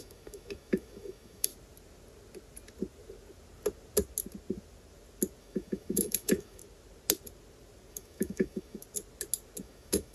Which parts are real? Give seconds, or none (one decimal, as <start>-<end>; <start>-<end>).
1.5-5.4; 6.6-7.9; 8.8-9.6